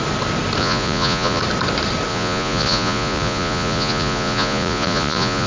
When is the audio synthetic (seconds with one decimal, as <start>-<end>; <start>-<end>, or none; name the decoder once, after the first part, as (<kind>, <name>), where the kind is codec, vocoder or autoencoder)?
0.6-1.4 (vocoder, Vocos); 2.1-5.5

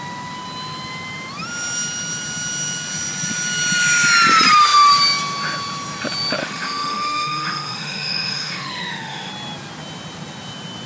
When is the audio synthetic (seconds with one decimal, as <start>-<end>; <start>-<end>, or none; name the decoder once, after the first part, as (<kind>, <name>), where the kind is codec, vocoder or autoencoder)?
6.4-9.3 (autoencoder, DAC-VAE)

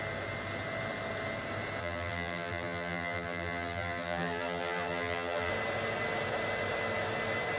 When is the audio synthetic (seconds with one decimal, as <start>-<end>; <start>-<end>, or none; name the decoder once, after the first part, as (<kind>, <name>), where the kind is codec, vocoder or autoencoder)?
1.8-5.5 (vocoder, BigVGAN v2)